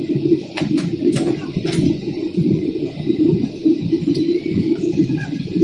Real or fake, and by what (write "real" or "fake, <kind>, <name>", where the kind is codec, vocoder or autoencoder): fake, vocoder, Vocos